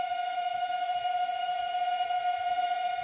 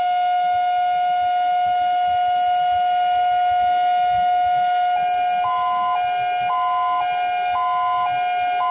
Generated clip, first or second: first